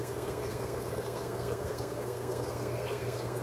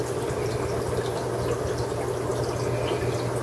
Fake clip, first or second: first